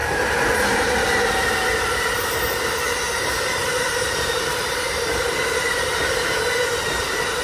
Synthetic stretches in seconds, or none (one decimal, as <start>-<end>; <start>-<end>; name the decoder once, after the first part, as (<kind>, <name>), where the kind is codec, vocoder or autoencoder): 0.0-1.3 (vocoder, BigVGAN v2); 3.6-6.7